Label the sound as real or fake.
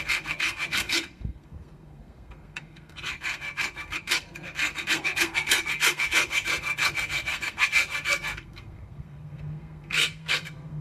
fake